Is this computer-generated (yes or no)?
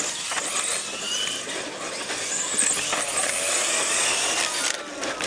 no